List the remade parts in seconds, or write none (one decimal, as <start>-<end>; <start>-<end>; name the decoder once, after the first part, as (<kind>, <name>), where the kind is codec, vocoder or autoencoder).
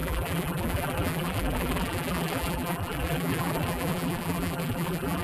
0.0-5.2 (vocoder, BigVGAN v2)